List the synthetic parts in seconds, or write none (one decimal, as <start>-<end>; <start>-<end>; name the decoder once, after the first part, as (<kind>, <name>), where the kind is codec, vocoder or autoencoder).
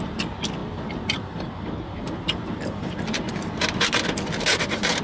4.5-5.0 (vocoder, BigVGAN v2)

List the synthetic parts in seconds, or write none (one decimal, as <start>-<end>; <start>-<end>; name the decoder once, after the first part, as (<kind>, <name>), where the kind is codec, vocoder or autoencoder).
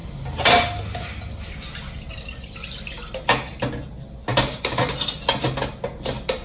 none